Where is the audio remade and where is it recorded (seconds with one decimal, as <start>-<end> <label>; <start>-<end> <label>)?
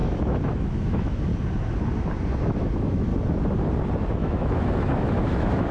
0.0-1.3 remade; 1.3-2.3 recorded; 2.3-3.1 remade; 3.1-4.1 recorded; 4.1-5.7 remade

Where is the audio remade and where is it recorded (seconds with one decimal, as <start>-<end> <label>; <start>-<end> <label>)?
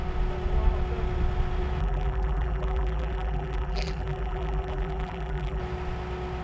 0.0-1.8 recorded; 1.8-5.6 remade; 5.6-6.4 recorded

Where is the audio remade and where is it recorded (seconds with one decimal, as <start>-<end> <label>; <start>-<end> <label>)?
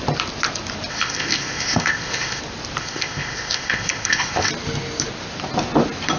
0.0-0.9 recorded; 0.9-2.4 remade; 2.4-2.8 recorded; 2.8-4.5 remade; 4.5-6.2 recorded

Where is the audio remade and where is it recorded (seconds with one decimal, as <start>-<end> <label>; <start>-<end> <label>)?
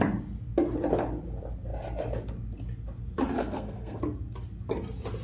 0.0-3.4 recorded; 3.4-4.0 remade; 4.0-5.2 recorded